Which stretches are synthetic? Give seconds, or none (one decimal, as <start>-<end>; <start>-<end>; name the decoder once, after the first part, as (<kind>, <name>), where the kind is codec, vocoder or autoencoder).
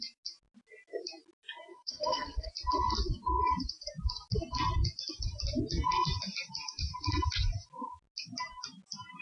1.7-2.5 (codec, SNAC)